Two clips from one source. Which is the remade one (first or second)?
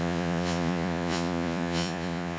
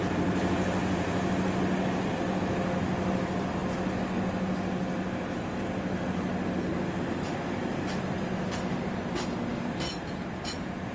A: first